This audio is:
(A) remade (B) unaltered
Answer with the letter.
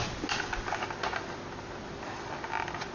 B